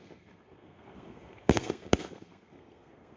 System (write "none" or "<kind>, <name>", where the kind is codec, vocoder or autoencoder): codec, SNAC